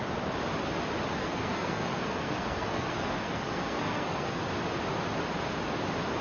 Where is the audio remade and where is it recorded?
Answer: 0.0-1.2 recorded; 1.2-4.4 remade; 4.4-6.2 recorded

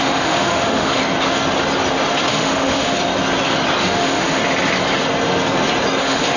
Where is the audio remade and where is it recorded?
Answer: 0.0-1.0 remade; 1.0-2.3 recorded; 2.3-3.0 remade; 3.0-3.8 recorded; 3.8-4.4 remade; 4.4-6.0 recorded; 6.0-6.4 remade

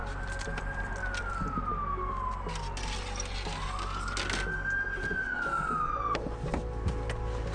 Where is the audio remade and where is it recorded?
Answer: 0.0-7.5 recorded

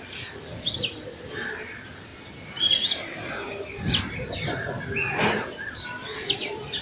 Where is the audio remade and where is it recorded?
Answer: 0.0-6.8 recorded